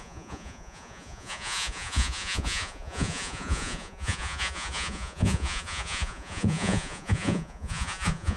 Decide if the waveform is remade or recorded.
remade